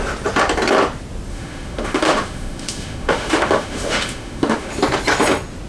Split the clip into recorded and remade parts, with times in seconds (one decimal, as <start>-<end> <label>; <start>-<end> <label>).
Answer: 0.0-1.3 recorded; 1.3-4.7 remade; 4.7-5.7 recorded